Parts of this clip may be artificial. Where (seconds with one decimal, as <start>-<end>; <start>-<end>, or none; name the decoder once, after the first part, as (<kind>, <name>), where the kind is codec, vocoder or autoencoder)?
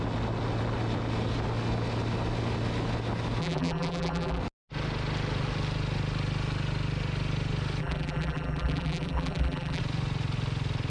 3.4-4.4 (vocoder, BigVGAN v2); 7.8-9.8